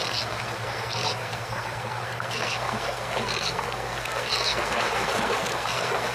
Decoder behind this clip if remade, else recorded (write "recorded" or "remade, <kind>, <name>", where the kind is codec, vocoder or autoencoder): remade, codec, SNAC